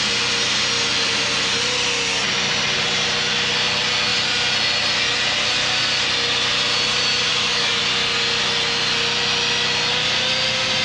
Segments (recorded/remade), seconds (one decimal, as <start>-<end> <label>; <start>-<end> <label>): 0.0-7.3 recorded; 7.3-7.8 remade; 7.8-10.8 recorded